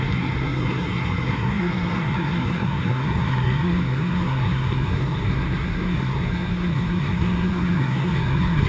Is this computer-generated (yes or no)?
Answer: yes